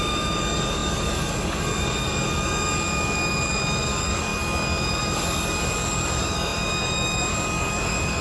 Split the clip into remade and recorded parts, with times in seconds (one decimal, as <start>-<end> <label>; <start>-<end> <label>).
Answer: 0.0-8.2 remade